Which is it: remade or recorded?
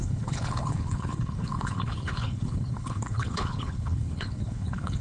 remade